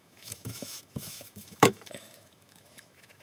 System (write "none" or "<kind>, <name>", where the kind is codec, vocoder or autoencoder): autoencoder, DAC-VAE